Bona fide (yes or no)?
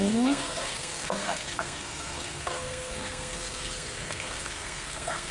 no